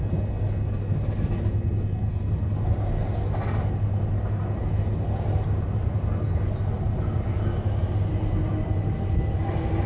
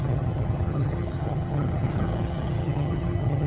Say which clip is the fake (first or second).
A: second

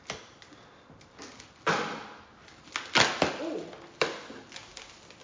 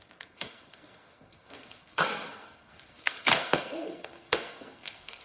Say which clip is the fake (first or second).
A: second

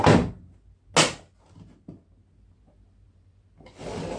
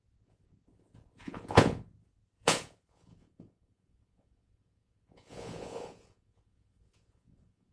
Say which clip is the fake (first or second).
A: second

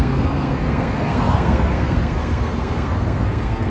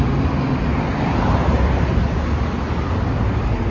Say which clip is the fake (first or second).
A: first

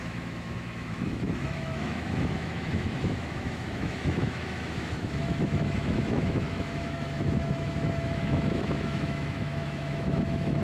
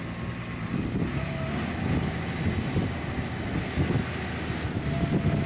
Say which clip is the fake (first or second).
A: first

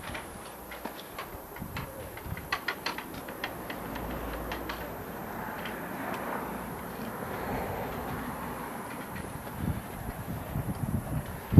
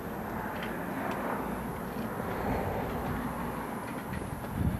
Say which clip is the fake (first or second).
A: first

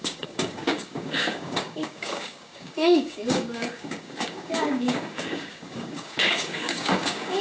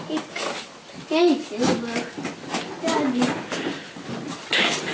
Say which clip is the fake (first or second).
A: first